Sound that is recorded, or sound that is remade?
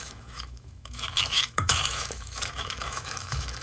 remade